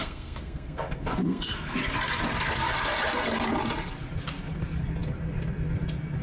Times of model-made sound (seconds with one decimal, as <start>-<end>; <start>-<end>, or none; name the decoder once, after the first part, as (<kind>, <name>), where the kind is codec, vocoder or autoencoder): 0.0-1.8 (codec, SNAC)